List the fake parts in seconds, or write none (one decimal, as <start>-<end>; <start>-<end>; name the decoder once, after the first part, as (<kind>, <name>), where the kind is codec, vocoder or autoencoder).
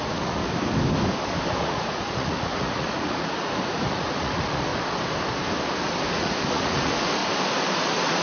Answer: 0.0-0.4 (vocoder, Vocos); 1.6-4.7; 6.1-7.2; 7.7-8.2